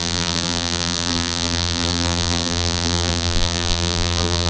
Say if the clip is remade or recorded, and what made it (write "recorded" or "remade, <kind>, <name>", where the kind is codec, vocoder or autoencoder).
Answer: remade, vocoder, BigVGAN v2